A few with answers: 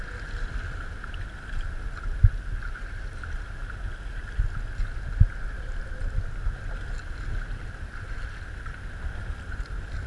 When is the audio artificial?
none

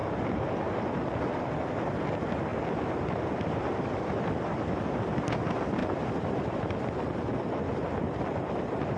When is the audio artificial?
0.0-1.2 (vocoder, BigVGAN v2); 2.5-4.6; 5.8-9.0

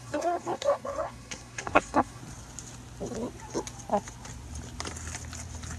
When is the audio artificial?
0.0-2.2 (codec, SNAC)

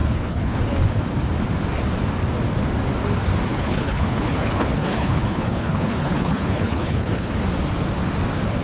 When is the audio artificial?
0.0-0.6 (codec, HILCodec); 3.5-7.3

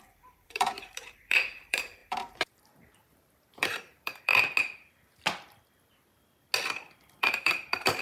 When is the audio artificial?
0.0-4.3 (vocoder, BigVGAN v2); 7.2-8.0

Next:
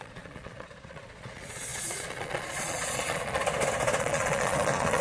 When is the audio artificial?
0.0-3.4 (vocoder, Vocos); 4.0-5.0

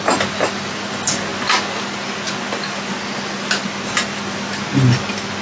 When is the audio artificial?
none